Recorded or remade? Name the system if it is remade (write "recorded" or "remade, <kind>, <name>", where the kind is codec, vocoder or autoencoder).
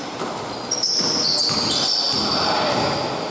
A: recorded